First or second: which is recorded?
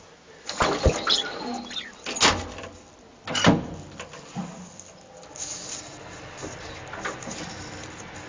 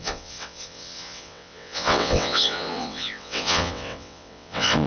first